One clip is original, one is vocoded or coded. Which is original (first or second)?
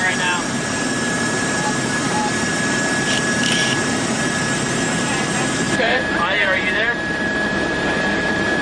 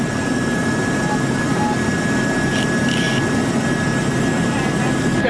second